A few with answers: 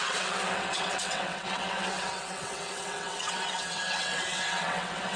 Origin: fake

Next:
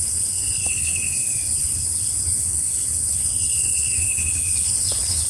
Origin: fake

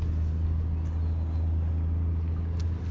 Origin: real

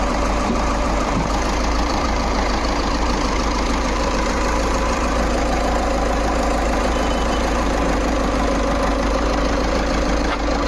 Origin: fake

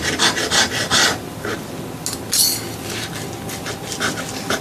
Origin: real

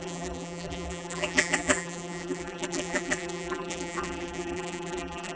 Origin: fake